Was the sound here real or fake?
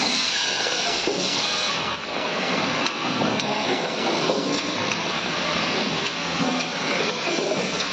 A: fake